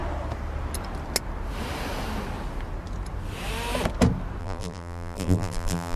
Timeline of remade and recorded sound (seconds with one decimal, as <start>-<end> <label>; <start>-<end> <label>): 0.0-4.4 recorded; 4.4-6.0 remade